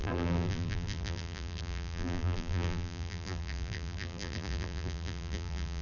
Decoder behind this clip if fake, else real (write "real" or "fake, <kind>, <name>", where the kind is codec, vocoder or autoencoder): fake, vocoder, BigVGAN v2